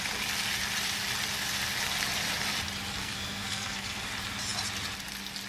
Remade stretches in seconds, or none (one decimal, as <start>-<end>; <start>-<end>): 3.0-4.1